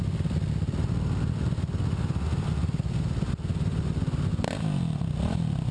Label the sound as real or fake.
real